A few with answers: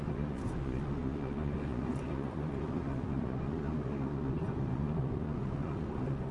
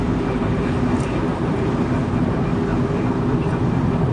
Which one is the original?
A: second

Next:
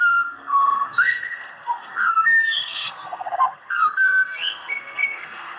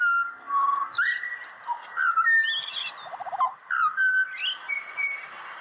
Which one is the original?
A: second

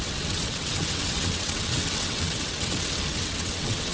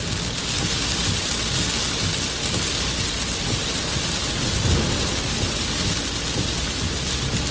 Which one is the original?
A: second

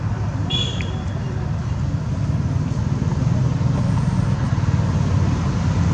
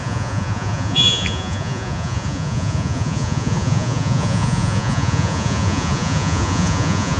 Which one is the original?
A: first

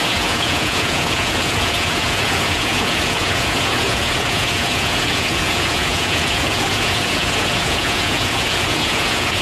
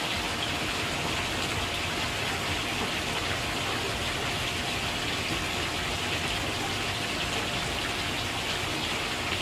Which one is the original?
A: second